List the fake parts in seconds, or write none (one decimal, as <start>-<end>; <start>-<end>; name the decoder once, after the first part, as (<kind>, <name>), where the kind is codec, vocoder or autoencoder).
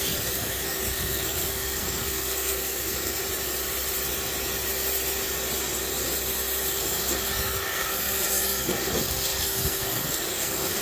0.0-3.2 (codec, SNAC); 6.7-10.8